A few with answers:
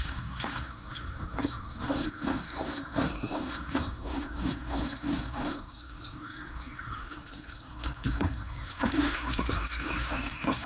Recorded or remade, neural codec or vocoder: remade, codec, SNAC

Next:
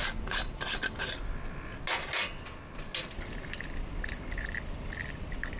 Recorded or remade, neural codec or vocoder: recorded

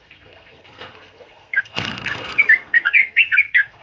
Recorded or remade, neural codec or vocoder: remade, codec, SNAC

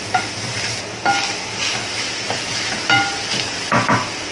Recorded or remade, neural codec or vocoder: recorded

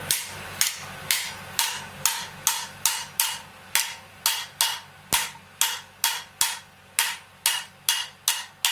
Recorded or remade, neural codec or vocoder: recorded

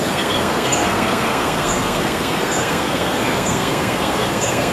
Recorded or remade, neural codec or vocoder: remade, codec, SNAC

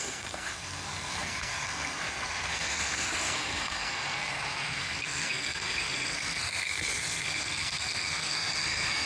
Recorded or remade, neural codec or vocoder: remade, codec, SNAC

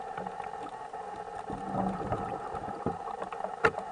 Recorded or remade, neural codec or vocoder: recorded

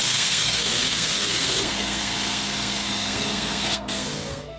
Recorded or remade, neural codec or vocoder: remade, codec, SNAC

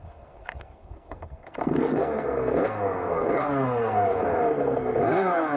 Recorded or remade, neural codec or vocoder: remade, codec, SNAC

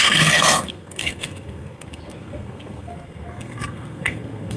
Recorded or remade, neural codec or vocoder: remade, codec, SNAC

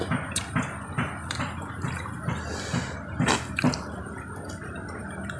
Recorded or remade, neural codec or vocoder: recorded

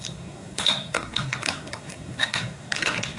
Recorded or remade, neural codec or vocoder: remade, codec, SNAC